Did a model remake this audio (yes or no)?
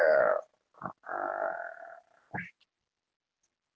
no